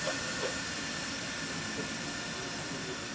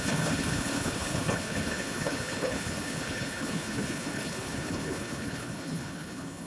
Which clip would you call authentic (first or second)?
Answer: first